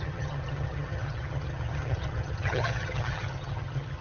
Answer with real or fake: fake